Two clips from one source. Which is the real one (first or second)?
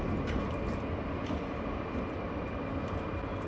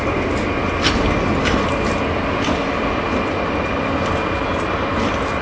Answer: second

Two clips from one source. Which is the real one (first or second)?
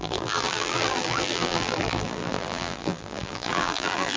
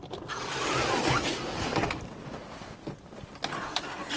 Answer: second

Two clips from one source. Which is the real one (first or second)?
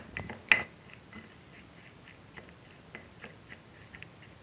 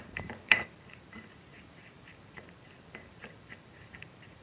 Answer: first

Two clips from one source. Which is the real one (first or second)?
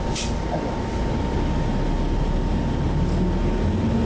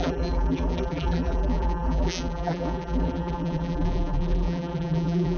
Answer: first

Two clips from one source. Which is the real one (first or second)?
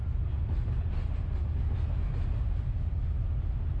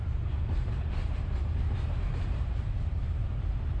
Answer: first